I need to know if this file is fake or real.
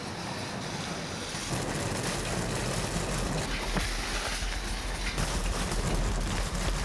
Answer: real